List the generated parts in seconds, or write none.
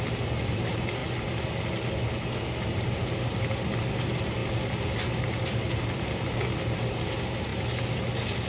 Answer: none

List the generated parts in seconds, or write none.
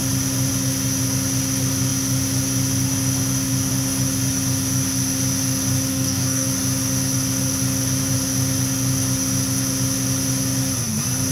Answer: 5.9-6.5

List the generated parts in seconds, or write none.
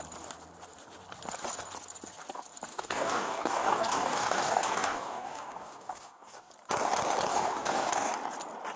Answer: 2.7-6.5; 7.3-8.1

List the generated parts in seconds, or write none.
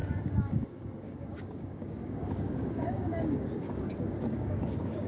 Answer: 0.0-5.1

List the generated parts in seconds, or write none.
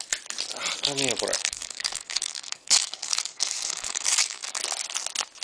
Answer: 1.4-4.6